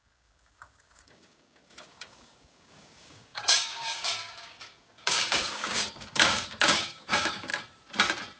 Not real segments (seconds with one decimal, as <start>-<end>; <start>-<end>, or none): 0.0-7.5